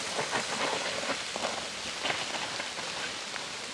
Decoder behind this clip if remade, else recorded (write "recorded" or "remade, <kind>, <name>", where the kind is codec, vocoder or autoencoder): recorded